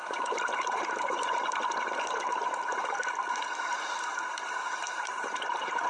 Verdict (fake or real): fake